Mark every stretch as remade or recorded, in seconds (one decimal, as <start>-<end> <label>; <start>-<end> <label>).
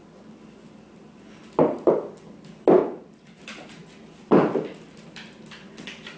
0.0-6.2 recorded